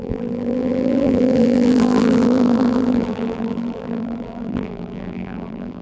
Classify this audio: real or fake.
fake